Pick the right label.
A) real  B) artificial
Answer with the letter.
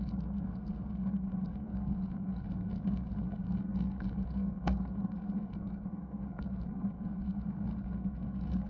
B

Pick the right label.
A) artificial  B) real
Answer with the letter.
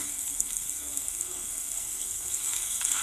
A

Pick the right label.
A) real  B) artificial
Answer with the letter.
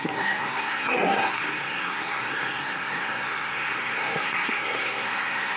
B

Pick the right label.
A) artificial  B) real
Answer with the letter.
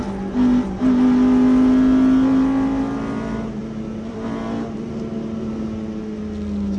B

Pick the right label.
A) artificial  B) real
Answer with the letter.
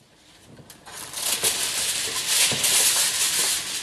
B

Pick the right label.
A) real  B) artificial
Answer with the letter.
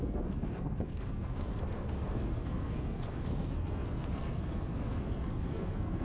B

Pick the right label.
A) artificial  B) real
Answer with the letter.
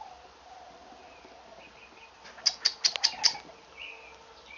B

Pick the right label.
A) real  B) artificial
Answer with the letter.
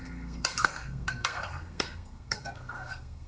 B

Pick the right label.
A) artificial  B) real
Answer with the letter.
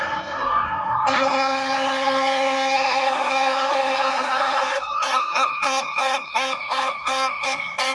A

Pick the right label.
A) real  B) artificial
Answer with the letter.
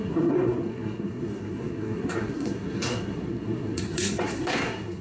B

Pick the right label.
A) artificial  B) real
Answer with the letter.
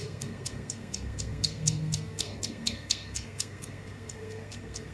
A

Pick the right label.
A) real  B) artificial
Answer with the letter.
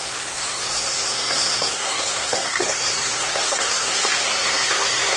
B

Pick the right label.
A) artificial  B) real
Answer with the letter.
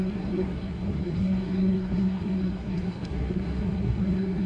A